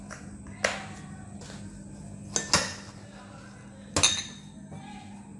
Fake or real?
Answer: real